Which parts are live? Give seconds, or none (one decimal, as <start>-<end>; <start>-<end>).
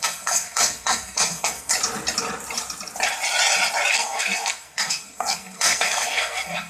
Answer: 1.7-3.9